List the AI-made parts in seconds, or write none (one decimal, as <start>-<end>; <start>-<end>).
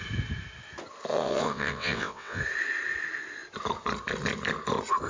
1.1-2.4